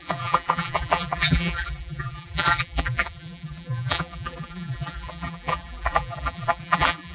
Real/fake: fake